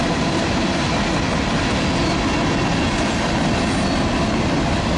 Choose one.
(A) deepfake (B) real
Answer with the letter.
B